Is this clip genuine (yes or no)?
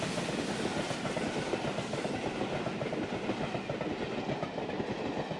yes